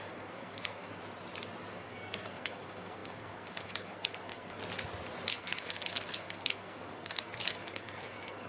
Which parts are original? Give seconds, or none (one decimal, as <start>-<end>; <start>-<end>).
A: 1.0-1.7; 4.6-5.3